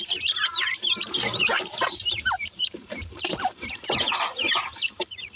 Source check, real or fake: fake